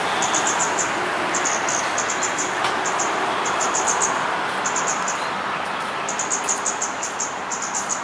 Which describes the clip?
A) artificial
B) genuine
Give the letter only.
B